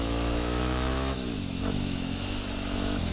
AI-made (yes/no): yes